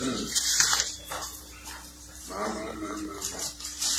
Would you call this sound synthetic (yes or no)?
yes